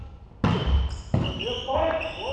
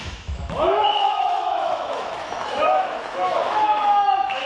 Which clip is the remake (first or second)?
second